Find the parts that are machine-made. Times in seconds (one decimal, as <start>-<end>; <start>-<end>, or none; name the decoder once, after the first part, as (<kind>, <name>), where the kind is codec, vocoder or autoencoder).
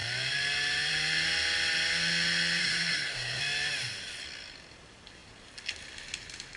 2.6-3.4 (codec, SNAC)